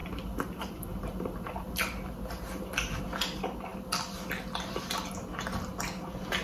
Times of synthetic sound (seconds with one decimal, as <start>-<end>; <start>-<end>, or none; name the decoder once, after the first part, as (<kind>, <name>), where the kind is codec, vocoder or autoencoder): 0.0-3.0 (vocoder, BigVGAN v2)